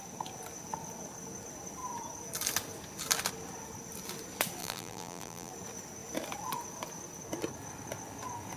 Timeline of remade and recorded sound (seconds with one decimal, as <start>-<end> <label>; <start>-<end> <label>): 0.0-4.6 recorded; 4.6-5.5 remade; 5.5-8.6 recorded

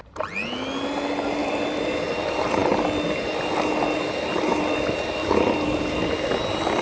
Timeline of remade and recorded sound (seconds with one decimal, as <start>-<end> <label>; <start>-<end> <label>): 0.0-1.4 recorded; 1.4-2.0 remade; 2.0-4.5 recorded; 4.5-6.8 remade

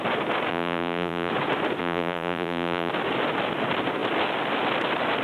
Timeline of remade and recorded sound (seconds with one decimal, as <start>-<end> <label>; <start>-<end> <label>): 0.0-0.5 recorded; 0.5-1.3 remade; 1.3-1.8 recorded; 1.8-2.9 remade; 2.9-5.2 recorded

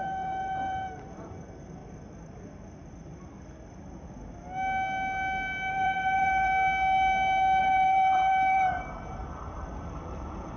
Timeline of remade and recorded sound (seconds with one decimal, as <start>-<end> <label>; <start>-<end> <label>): 0.0-1.8 remade; 1.8-5.7 recorded; 5.7-6.5 remade; 6.5-7.6 recorded; 7.6-10.6 remade